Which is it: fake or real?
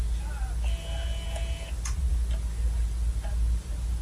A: real